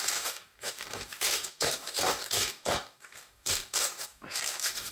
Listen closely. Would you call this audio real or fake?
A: fake